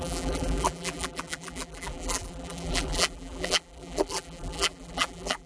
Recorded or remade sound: remade